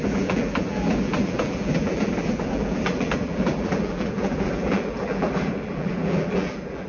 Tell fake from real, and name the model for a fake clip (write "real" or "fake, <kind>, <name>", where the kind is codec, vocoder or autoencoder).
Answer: fake, vocoder, BigVGAN v2